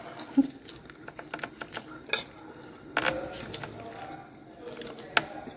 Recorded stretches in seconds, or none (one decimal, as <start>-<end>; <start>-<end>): 0.0-5.6